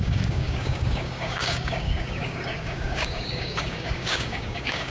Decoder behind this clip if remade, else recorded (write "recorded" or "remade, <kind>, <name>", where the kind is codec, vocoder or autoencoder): remade, codec, DAC